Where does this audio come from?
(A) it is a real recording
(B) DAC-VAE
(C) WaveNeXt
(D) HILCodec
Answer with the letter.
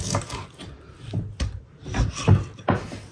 A